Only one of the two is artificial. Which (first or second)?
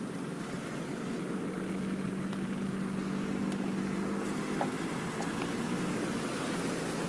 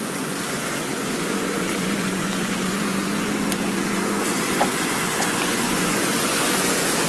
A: second